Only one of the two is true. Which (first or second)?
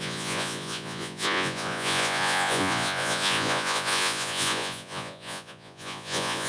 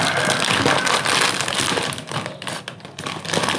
second